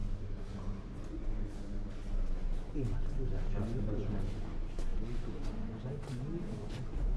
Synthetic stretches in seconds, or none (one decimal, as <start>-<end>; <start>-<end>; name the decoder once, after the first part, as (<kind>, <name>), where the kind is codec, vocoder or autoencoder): 4.9-5.5 (vocoder, BigVGAN v2)

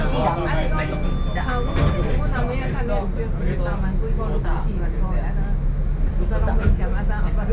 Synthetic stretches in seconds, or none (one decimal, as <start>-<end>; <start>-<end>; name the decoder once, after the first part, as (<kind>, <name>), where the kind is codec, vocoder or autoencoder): 3.8-4.8 (vocoder, BigVGAN v2)